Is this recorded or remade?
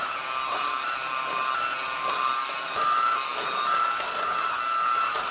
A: recorded